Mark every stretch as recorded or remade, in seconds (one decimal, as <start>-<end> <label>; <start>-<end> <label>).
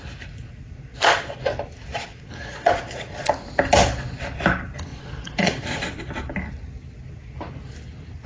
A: 0.0-0.9 recorded; 0.9-1.5 remade; 1.5-1.9 recorded; 1.9-3.3 remade; 3.3-4.9 recorded; 4.9-6.0 remade; 6.0-8.3 recorded